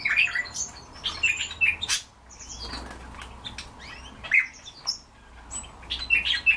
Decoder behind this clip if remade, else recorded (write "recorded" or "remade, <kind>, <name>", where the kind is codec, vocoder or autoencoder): recorded